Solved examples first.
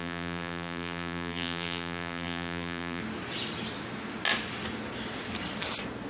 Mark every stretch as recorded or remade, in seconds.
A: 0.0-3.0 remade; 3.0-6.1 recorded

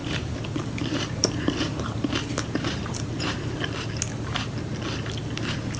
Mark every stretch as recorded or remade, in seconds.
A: 0.0-3.5 remade; 3.5-5.8 recorded